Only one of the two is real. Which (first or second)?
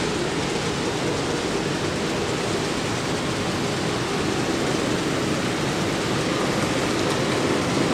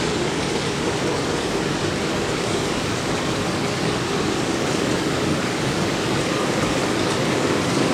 first